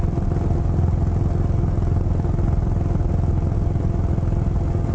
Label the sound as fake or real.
real